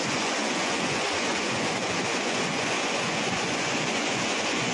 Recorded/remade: remade